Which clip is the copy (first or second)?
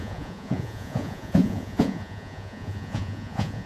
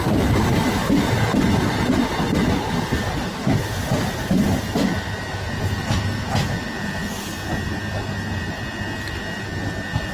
first